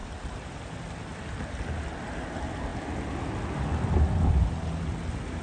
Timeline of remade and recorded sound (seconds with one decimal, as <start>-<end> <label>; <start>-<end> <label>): 0.0-5.4 recorded